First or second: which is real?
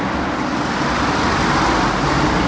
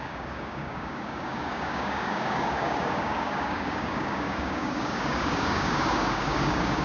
first